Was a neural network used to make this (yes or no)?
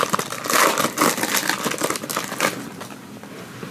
no